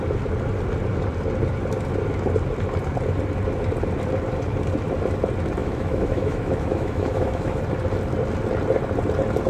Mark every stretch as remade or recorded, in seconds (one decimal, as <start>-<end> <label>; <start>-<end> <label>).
0.0-5.6 recorded; 5.6-7.6 remade; 7.6-9.5 recorded